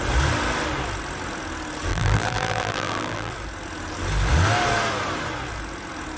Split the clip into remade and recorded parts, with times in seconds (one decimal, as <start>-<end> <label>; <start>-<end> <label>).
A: 0.0-1.9 recorded; 1.9-3.3 remade; 3.3-6.2 recorded